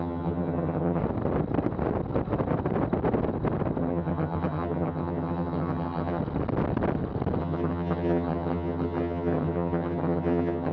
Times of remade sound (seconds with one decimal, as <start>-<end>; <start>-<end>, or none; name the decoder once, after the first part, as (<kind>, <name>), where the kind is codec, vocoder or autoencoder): 0.0-1.0 (vocoder, HiFi-GAN); 3.8-6.2; 7.4-10.7